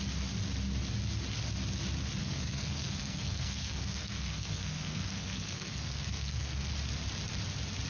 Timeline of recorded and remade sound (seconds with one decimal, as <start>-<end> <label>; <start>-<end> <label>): 0.0-2.2 recorded; 2.2-6.7 remade; 6.7-7.9 recorded